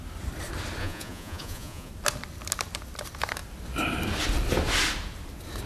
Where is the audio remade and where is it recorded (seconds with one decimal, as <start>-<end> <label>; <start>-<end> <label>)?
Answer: 0.0-0.8 recorded; 0.8-1.9 remade; 1.9-5.7 recorded